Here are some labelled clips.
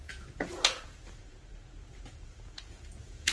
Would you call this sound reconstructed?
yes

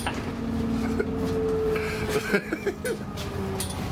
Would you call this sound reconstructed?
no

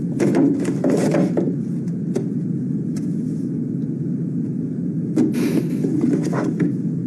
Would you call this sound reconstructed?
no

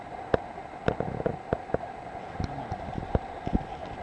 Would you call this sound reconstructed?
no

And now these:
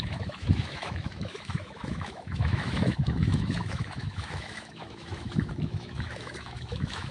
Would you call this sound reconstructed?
yes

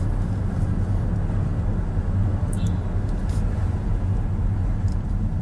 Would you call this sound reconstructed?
no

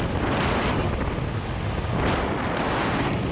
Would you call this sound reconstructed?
no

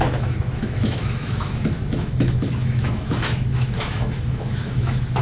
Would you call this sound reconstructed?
yes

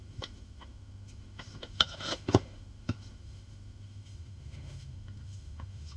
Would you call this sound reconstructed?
yes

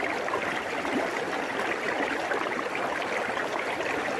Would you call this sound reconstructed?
no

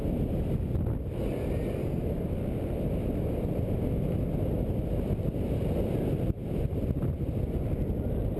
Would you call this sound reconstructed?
no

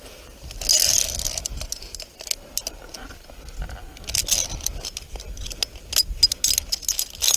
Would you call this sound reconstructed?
no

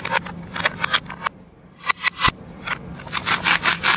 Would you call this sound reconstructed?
no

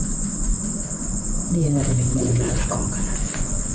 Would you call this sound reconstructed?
yes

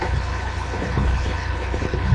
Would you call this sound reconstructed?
yes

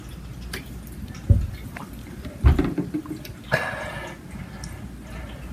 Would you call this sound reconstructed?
no